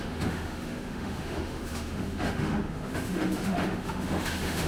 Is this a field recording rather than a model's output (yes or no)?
no